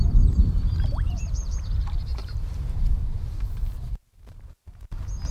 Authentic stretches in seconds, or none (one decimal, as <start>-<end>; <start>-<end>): 0.4-1.1